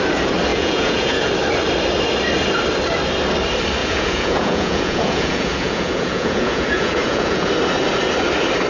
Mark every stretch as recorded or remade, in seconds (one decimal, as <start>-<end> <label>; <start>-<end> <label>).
0.0-0.5 recorded; 0.5-1.3 remade; 1.3-3.8 recorded; 3.8-7.5 remade; 7.5-8.7 recorded